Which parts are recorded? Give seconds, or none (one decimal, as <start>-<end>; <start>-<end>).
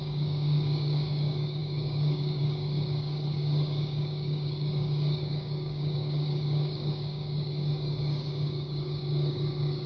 none